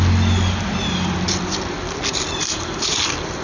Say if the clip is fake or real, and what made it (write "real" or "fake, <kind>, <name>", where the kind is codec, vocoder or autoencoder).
real